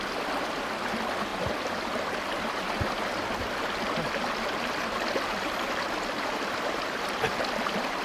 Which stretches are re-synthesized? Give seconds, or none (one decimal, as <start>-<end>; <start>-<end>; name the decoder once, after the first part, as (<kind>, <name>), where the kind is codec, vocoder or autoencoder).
none